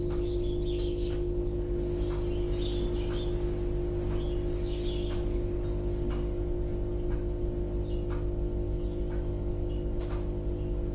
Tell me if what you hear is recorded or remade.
recorded